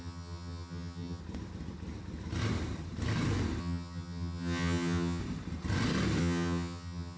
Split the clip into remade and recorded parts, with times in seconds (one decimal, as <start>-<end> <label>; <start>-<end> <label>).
0.0-1.2 remade; 1.2-3.6 recorded; 3.6-5.2 remade; 5.2-6.2 recorded; 6.2-7.2 remade